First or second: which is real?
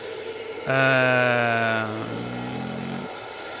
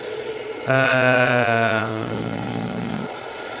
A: first